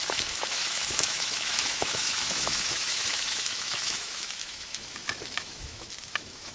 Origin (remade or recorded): remade